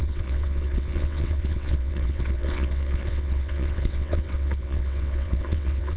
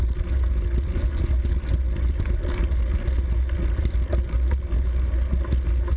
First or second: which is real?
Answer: second